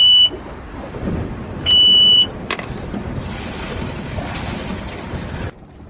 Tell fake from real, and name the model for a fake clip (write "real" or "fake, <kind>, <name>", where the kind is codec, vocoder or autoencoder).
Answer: fake, vocoder, BigVGAN v2